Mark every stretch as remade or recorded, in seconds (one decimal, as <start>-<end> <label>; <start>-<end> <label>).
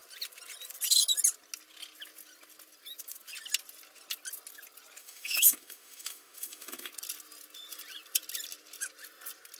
0.0-5.0 recorded; 5.0-6.9 remade; 6.9-9.6 recorded